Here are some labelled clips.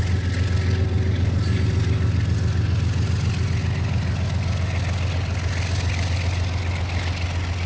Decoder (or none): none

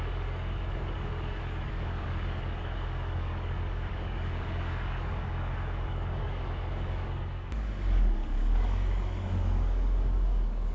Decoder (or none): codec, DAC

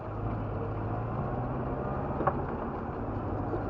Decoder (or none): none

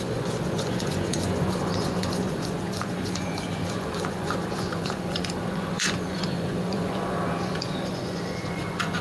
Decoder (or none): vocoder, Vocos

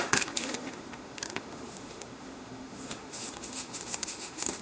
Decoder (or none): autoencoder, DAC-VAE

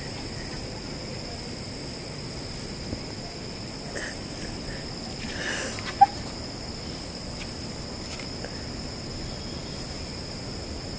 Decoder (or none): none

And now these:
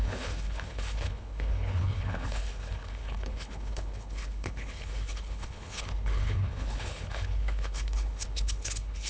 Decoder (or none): codec, HILCodec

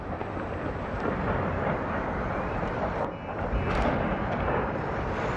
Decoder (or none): none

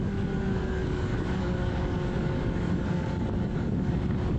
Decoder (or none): codec, DAC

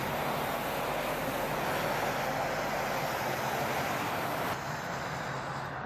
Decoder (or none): none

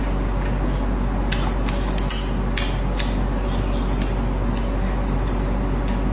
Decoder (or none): none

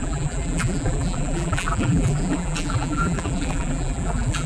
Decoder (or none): vocoder, BigVGAN v2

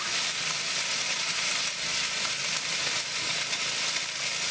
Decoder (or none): none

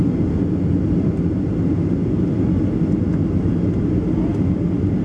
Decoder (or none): none